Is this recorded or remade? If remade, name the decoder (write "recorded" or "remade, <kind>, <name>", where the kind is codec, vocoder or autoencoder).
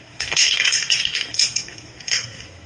remade, codec, SNAC